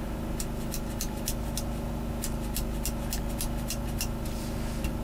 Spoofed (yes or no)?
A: no